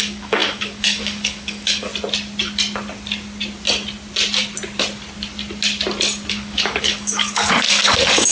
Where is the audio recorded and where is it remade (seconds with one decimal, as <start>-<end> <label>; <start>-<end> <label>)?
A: 0.0-1.9 remade; 1.9-6.3 recorded; 6.3-8.3 remade